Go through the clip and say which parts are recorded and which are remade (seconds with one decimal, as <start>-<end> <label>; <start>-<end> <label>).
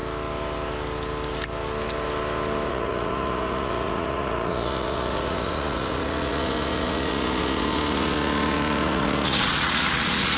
0.0-2.7 recorded; 2.7-10.4 remade